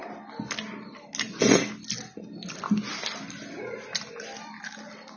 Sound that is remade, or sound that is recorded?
recorded